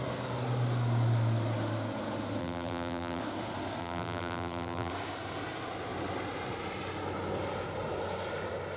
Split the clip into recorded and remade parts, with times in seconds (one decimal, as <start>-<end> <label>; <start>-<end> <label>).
0.0-2.4 recorded; 2.4-3.2 remade; 3.2-3.8 recorded; 3.8-4.9 remade; 4.9-8.8 recorded